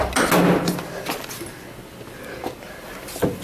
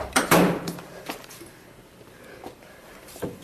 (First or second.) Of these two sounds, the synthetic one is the second